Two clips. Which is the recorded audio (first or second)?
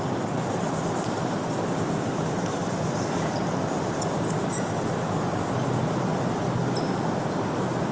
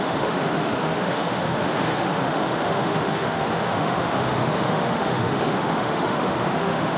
first